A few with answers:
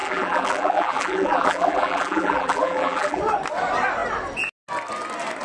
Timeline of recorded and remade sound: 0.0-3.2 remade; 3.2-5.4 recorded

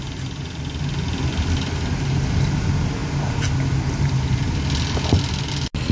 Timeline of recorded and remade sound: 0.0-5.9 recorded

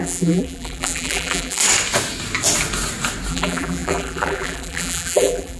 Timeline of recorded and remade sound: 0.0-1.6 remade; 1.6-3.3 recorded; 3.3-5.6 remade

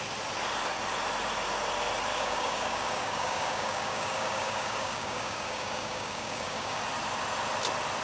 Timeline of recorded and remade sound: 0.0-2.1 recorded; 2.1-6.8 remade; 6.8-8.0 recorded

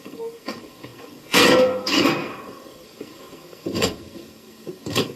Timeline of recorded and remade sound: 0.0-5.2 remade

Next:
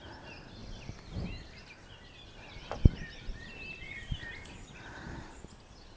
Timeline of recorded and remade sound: 0.0-6.0 recorded